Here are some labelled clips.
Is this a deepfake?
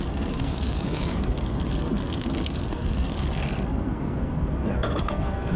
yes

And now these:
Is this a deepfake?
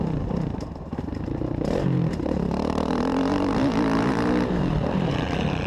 yes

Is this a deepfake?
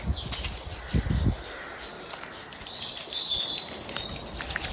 no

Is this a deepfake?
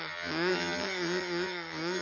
yes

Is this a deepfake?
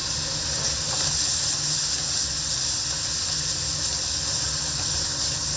no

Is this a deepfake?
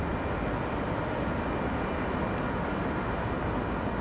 no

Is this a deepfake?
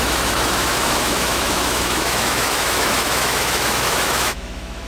yes